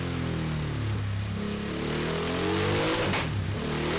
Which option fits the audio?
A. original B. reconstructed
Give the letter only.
A